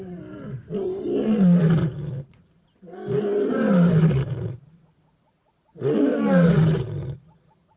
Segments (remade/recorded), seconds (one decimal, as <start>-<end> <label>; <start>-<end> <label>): 0.0-1.8 recorded; 1.8-2.5 remade; 2.5-4.2 recorded; 4.2-6.0 remade; 6.0-7.8 recorded